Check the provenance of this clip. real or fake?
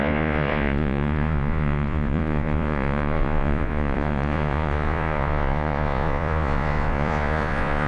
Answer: fake